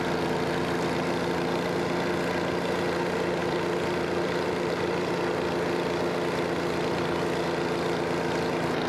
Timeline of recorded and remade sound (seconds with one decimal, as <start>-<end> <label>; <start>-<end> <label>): 0.0-3.4 recorded; 3.4-5.1 remade; 5.1-8.9 recorded